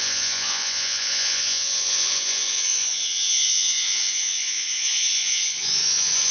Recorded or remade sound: remade